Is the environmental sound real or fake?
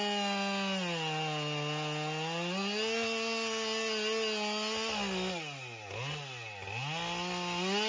real